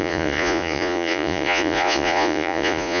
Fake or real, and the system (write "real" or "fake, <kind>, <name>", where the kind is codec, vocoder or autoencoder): fake, vocoder, Vocos